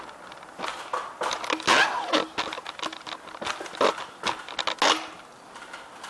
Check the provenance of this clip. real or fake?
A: real